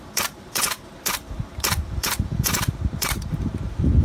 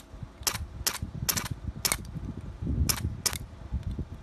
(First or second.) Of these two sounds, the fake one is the first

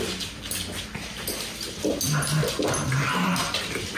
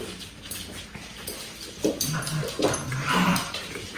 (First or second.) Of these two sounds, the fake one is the second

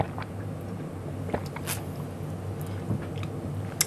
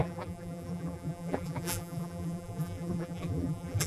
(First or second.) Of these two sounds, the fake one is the second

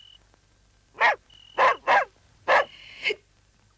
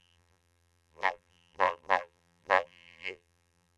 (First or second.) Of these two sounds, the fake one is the second